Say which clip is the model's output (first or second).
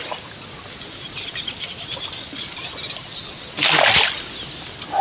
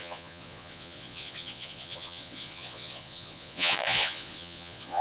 second